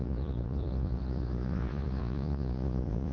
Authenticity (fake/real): fake